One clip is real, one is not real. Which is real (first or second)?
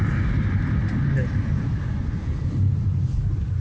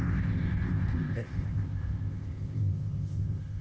first